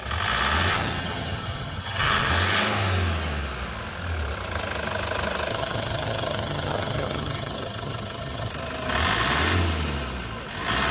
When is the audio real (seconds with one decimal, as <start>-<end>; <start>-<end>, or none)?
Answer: 0.0-0.7; 2.3-5.5; 8.5-10.9